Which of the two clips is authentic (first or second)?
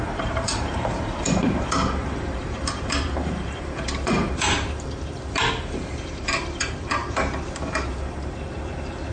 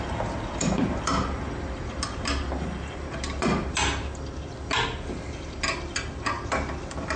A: second